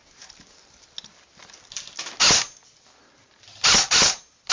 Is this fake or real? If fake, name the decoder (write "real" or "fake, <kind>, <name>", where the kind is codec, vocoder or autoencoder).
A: real